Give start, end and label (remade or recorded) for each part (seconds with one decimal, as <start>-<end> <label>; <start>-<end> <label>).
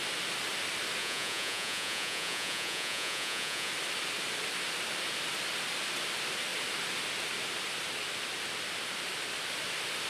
0.0-1.0 recorded; 1.0-3.7 remade; 3.7-10.1 recorded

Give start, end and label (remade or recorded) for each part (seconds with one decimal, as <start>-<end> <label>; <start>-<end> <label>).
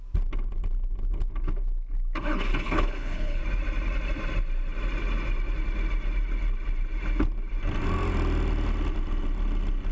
0.0-2.5 recorded; 2.5-3.4 remade; 3.4-9.9 recorded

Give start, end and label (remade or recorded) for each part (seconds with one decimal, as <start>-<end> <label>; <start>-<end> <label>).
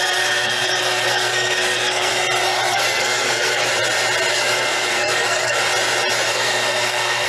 0.0-2.1 remade; 2.1-2.7 recorded; 2.7-3.7 remade; 3.7-4.3 recorded; 4.3-5.6 remade; 5.6-6.3 recorded; 6.3-7.3 remade